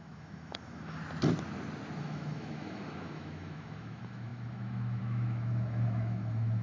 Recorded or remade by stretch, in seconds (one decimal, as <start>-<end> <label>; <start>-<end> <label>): 0.0-1.0 remade; 1.0-2.0 recorded; 2.0-6.6 remade